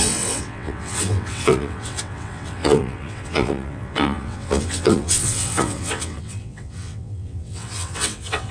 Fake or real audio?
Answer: fake